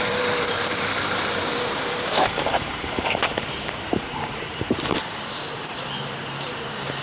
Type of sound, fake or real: fake